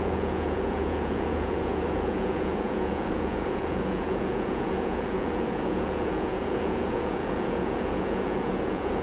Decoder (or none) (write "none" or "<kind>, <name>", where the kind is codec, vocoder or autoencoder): vocoder, Vocos